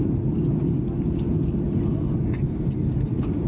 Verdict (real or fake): real